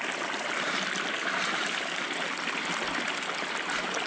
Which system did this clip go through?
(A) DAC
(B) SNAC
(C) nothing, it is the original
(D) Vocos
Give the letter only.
C